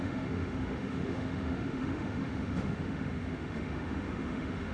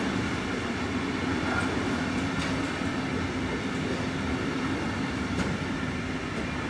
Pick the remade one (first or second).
first